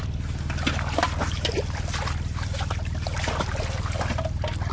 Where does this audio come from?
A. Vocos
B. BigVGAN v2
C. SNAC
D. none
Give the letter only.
D